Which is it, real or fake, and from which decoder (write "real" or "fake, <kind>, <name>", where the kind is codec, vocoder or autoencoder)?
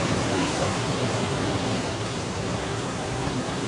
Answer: fake, codec, SNAC